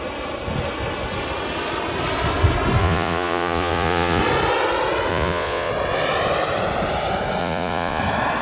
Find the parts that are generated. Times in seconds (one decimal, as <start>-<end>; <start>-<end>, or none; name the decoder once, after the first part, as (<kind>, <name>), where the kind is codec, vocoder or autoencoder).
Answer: 2.8-4.2 (vocoder, Vocos); 5.1-5.7; 7.4-8.0